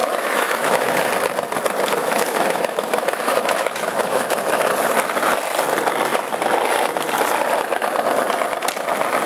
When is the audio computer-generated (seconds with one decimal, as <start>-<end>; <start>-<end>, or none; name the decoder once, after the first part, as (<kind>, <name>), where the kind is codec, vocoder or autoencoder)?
0.0-1.1 (autoencoder, DAC-VAE); 2.0-4.7